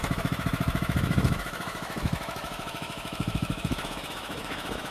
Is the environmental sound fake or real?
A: fake